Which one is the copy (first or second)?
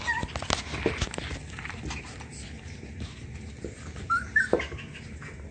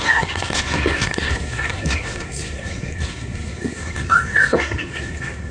second